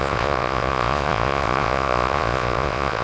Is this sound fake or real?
fake